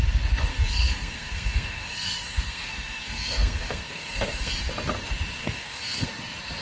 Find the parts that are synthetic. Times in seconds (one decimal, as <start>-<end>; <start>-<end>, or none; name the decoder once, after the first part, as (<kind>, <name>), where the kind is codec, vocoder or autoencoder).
0.5-4.5 (codec, SNAC); 5.4-6.1